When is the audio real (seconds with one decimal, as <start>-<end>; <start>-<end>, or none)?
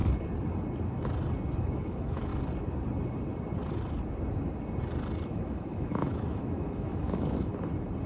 0.0-1.6; 2.3-5.3; 7.5-8.1